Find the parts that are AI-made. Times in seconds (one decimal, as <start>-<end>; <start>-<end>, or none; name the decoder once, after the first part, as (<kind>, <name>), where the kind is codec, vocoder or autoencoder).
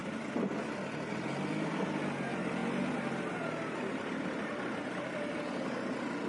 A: none